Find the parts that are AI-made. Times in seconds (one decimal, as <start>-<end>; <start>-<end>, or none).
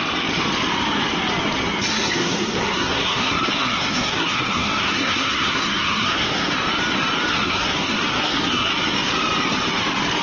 1.9-6.5; 7.3-8.7